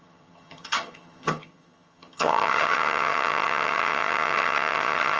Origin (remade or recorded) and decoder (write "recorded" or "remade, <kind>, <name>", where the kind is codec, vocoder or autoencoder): remade, vocoder, HiFi-GAN